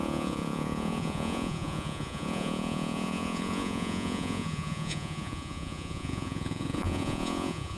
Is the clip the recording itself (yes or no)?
no